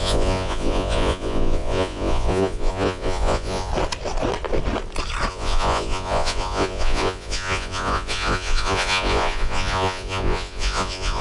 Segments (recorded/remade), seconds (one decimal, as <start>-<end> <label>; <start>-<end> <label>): 0.0-3.7 remade; 3.7-5.3 recorded; 5.3-11.2 remade